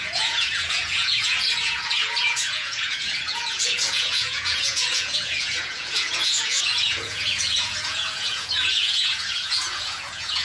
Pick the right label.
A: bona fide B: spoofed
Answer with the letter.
B